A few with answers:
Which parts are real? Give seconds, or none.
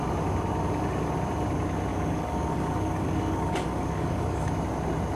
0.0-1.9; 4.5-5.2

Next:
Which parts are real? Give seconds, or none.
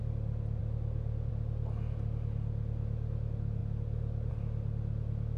0.0-5.4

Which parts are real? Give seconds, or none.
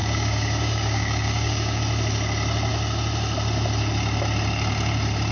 1.8-5.3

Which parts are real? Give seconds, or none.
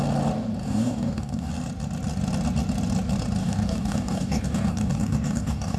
0.0-0.6; 1.5-3.4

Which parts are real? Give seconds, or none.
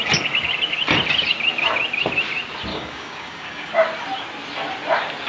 0.0-2.7; 3.7-5.3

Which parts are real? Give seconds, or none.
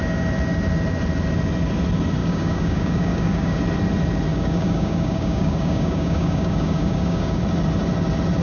0.0-2.2; 3.6-4.3; 7.4-8.4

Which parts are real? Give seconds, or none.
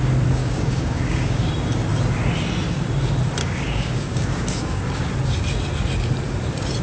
0.0-0.4; 1.5-3.4; 5.1-6.8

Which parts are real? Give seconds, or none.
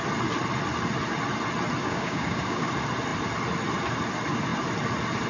0.0-1.8; 2.7-5.3